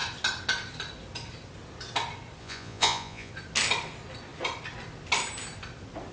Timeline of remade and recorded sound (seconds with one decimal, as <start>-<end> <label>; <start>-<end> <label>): 0.0-2.4 recorded; 2.4-3.3 remade; 3.3-6.1 recorded